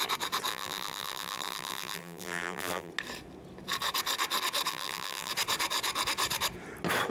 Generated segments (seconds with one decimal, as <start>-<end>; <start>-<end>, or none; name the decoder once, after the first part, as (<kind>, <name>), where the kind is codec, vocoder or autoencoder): 0.5-2.9 (vocoder, BigVGAN v2); 4.7-5.3